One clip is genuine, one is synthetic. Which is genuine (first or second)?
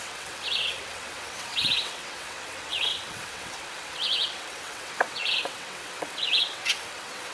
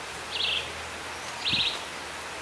second